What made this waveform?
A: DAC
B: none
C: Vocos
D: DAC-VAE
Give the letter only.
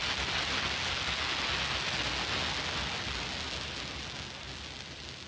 B